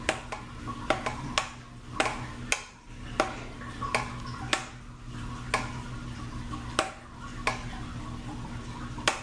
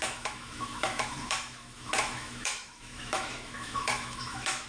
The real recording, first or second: first